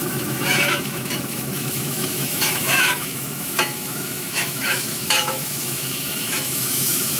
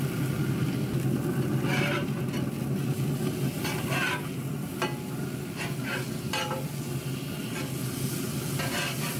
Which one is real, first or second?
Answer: second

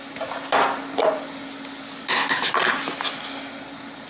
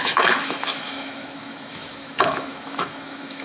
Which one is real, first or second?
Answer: first